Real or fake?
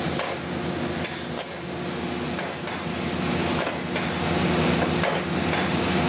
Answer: real